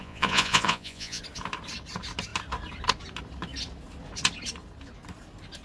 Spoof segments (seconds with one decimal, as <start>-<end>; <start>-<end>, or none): 0.0-1.2